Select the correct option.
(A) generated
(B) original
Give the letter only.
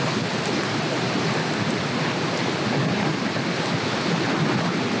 B